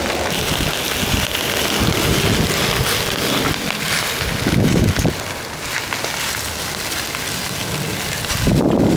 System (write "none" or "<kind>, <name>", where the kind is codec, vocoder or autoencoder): none